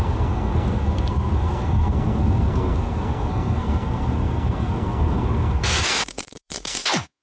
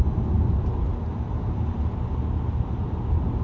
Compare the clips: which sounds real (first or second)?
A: second